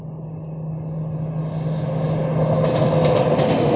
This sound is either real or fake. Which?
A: real